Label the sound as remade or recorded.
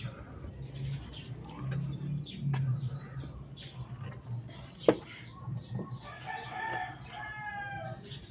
recorded